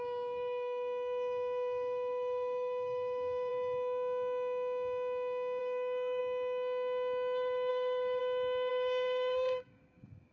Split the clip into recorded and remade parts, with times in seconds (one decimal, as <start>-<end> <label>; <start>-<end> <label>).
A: 0.0-3.5 remade; 3.5-5.6 recorded; 5.6-6.2 remade; 6.2-7.7 recorded; 7.7-8.2 remade; 8.2-8.7 recorded; 8.7-10.3 remade